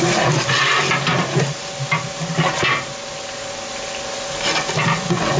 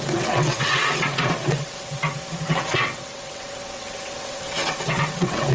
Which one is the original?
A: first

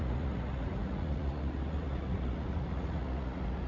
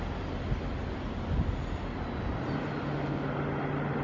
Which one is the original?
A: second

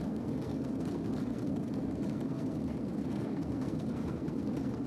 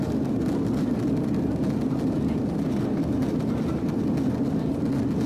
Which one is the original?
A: second